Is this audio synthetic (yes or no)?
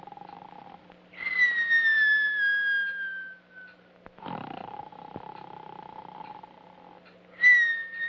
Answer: no